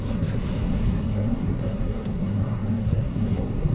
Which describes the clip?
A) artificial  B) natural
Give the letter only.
A